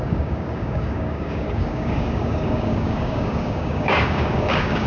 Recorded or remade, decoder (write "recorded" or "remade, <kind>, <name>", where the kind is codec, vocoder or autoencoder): remade, codec, DAC